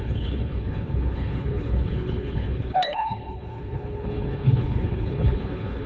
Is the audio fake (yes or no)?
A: yes